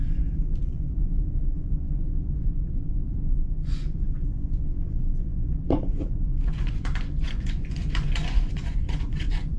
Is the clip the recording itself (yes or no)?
no